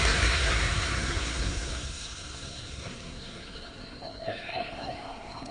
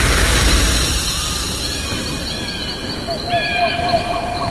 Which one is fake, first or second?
first